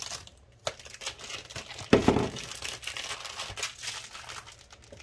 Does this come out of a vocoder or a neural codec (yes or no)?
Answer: no